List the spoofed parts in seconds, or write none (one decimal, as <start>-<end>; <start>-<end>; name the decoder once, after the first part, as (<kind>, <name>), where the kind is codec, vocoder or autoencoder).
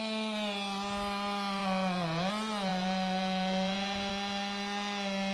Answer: 1.6-2.3 (vocoder, Vocos); 2.7-4.1